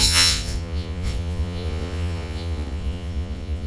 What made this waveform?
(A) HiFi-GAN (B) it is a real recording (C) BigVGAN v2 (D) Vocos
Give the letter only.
D